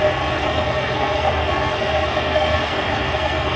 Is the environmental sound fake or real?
fake